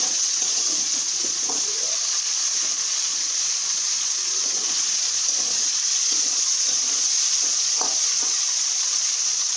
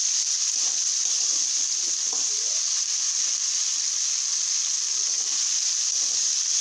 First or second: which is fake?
first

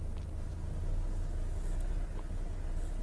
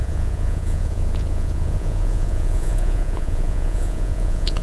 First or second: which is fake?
second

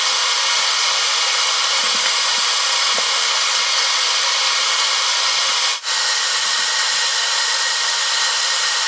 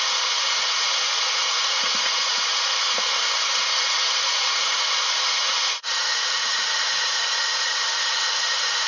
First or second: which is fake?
second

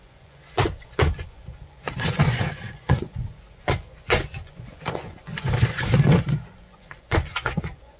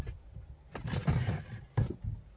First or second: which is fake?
first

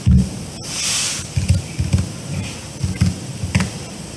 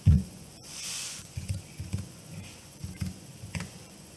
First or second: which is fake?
second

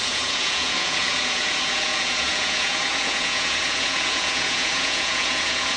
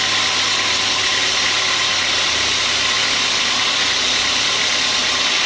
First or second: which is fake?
first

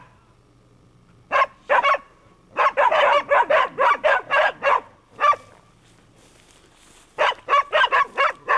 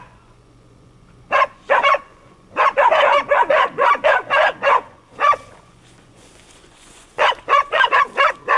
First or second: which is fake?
second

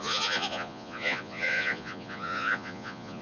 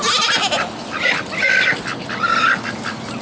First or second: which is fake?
first